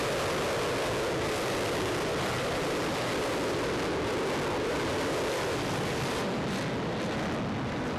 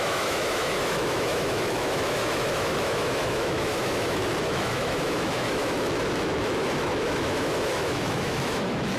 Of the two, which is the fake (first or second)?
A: second